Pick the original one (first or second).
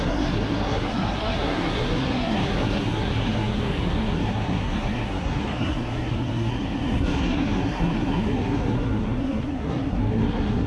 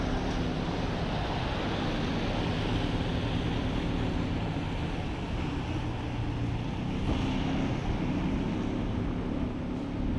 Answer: second